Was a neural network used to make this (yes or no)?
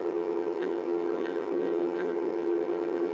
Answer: yes